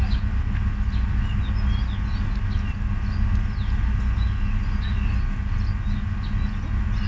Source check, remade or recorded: recorded